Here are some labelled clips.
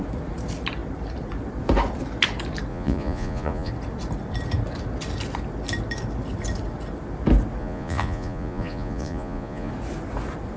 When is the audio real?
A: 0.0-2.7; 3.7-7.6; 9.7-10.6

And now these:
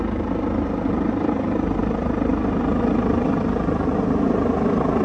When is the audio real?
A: 0.0-5.0

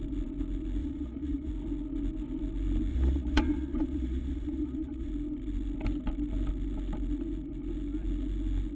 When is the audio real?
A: 0.0-0.8; 1.5-2.9; 5.1-8.8

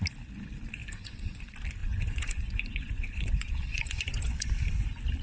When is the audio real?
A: 0.0-0.8; 1.4-1.8; 4.6-5.2

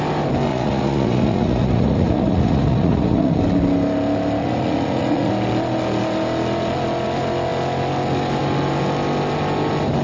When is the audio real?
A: 0.0-0.5; 3.4-4.4; 5.3-10.0

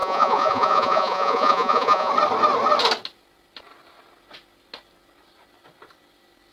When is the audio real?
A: 2.1-6.5

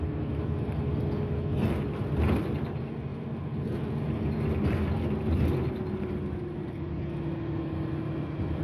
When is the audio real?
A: 0.0-8.6

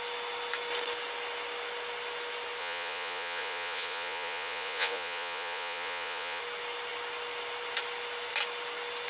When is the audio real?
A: 0.0-2.6; 6.4-9.1